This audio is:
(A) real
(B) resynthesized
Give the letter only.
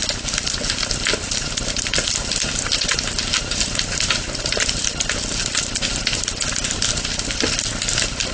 A